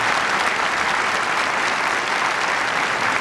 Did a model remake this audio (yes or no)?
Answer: no